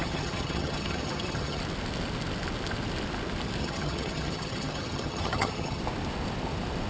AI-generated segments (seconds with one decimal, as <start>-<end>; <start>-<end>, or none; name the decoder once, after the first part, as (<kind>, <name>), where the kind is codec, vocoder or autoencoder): 0.0-1.6 (vocoder, HiFi-GAN); 3.6-5.8

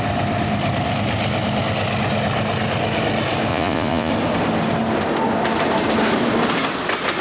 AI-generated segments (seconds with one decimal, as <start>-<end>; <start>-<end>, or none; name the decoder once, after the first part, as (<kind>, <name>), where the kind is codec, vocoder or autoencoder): 3.5-4.1 (vocoder, Vocos)